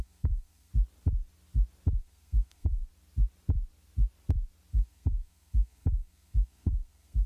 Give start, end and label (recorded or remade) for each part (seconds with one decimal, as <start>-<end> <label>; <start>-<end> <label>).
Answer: 0.0-0.7 remade; 0.7-2.0 recorded; 2.0-2.8 remade; 2.8-4.7 recorded; 4.7-7.3 remade